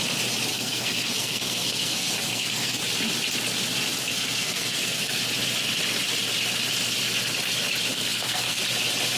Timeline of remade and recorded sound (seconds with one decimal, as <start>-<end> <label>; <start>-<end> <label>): 0.0-0.5 recorded; 0.5-2.8 remade; 2.8-4.1 recorded; 4.1-5.2 remade; 5.2-7.9 recorded; 7.9-8.6 remade; 8.6-9.2 recorded